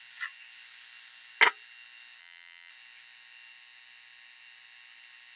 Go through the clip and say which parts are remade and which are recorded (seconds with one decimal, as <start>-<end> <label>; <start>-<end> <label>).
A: 0.0-2.2 recorded; 2.2-2.7 remade; 2.7-5.4 recorded